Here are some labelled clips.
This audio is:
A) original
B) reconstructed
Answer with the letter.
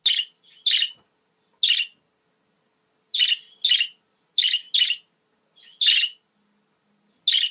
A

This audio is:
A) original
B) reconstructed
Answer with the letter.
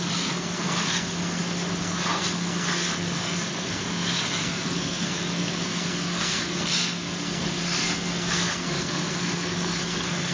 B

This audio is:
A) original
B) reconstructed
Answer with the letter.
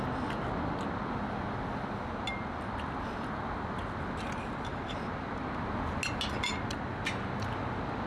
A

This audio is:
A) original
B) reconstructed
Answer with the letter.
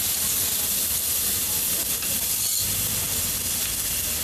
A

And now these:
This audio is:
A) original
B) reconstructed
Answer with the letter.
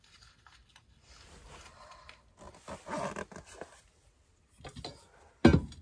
A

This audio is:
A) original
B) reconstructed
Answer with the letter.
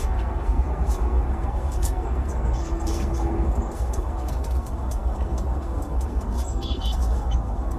B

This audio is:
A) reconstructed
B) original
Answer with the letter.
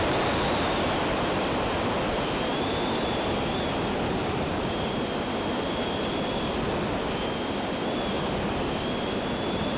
B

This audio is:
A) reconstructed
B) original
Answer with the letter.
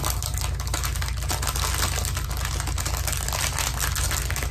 B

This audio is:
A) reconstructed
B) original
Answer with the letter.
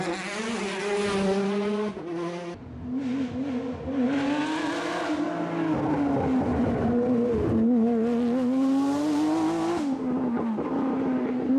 B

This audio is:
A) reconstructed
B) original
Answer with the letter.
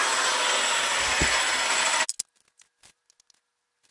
B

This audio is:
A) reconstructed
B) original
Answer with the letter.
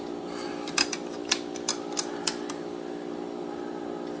B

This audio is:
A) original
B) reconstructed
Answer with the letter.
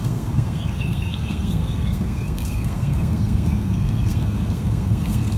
B